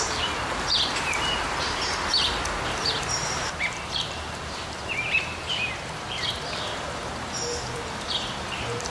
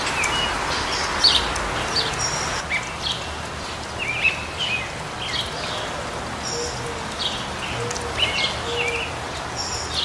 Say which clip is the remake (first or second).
first